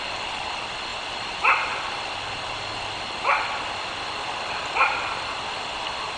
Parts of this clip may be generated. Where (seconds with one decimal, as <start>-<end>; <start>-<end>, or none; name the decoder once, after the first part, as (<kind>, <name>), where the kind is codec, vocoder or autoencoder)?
none